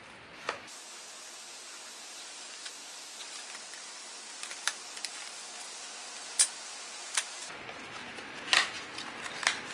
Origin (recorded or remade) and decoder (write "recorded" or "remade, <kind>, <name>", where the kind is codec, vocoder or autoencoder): recorded